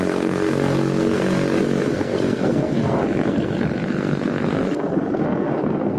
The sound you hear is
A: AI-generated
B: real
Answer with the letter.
A